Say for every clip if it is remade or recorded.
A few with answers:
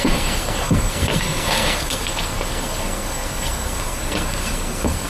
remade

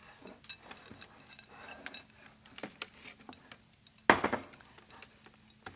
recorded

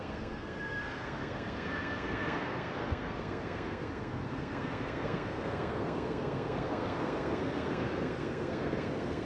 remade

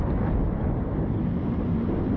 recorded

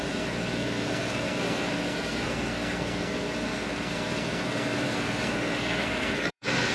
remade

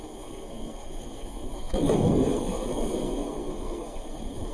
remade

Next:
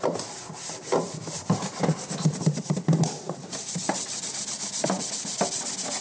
recorded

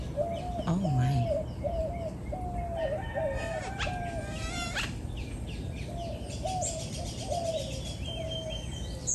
recorded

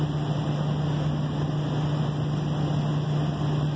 recorded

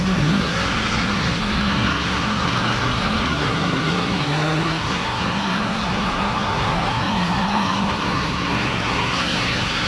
remade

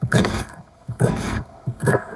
remade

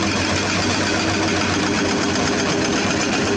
recorded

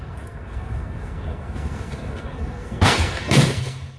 remade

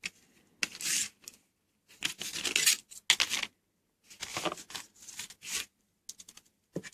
recorded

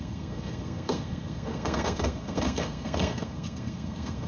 remade